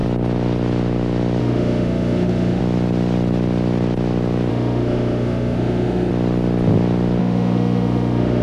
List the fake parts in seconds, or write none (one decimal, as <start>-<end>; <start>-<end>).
1.4-2.6; 4.5-6.1; 7.2-8.4